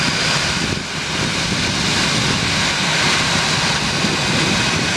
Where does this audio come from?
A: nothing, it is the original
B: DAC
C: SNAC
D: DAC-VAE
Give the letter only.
A